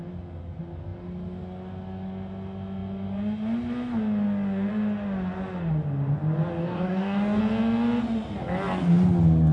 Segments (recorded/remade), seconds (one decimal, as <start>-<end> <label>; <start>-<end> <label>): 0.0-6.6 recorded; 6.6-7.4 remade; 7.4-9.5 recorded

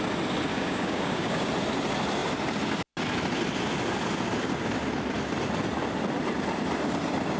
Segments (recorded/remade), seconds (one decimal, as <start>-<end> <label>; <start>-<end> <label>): 0.0-0.5 recorded; 0.5-1.5 remade; 1.5-7.4 recorded

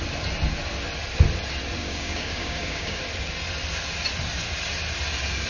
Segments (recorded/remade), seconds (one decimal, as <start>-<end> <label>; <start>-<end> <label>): 0.0-1.8 recorded; 1.8-3.0 remade; 3.0-5.5 recorded